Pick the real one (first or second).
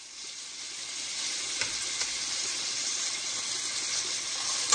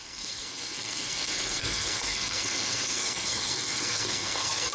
first